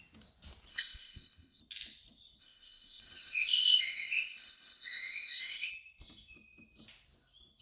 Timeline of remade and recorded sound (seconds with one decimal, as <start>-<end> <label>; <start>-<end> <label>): 0.0-0.7 recorded; 0.7-1.6 remade; 1.6-2.4 recorded; 2.4-5.7 remade; 5.7-7.6 recorded